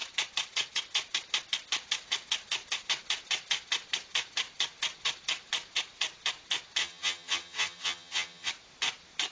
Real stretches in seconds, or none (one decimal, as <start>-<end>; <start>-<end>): 0.0-6.8; 8.5-9.3